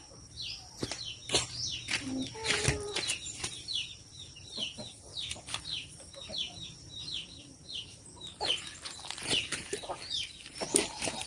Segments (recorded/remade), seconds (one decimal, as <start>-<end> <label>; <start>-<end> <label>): 0.0-11.3 remade